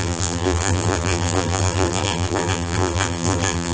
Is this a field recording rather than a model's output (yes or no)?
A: no